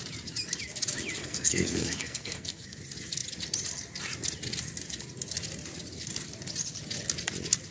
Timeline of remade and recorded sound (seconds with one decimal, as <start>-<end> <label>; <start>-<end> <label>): 0.0-1.2 recorded; 1.2-2.8 remade; 2.8-7.7 recorded